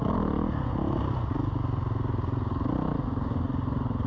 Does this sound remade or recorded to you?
recorded